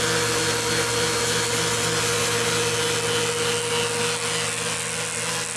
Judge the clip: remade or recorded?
recorded